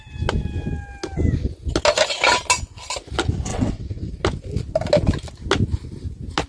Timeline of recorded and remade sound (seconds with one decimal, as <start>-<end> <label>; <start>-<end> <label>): 0.0-3.5 recorded; 3.5-4.1 remade; 4.1-6.5 recorded

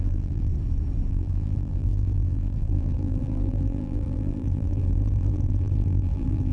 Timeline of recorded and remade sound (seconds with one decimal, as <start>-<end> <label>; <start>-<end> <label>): 0.0-0.5 remade; 0.5-1.1 recorded; 1.1-6.5 remade

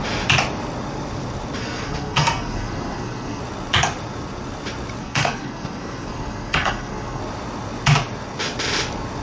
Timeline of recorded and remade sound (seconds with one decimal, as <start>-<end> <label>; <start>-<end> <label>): 0.0-1.6 recorded; 1.6-3.4 remade; 3.4-5.0 recorded; 5.0-7.2 remade; 7.2-9.2 recorded

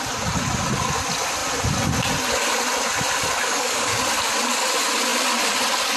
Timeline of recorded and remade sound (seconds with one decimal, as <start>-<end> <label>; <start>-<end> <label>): 0.0-3.4 recorded; 3.4-4.0 remade; 4.0-6.0 recorded

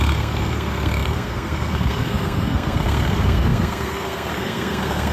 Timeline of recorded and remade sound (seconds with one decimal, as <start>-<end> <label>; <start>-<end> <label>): 0.0-5.1 remade

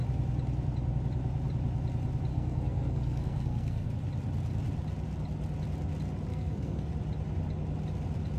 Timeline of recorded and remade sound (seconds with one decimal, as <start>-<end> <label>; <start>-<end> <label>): 0.0-2.3 recorded; 2.3-3.9 remade; 3.9-6.3 recorded; 6.3-6.9 remade; 6.9-8.4 recorded

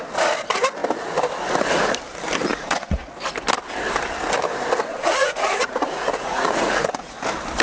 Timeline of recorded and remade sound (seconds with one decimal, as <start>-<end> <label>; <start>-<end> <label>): 0.0-2.5 recorded; 2.5-3.1 remade; 3.1-4.9 recorded; 4.9-6.9 remade; 6.9-7.6 recorded

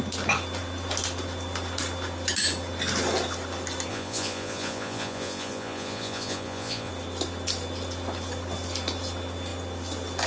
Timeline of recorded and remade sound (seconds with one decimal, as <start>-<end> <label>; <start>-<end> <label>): 0.0-3.9 recorded; 3.9-6.9 remade; 6.9-10.3 recorded